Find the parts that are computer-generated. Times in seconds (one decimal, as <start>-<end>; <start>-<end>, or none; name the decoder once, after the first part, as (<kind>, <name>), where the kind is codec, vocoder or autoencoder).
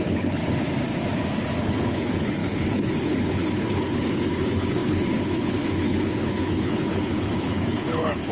0.0-0.4 (codec, HILCodec); 1.6-8.3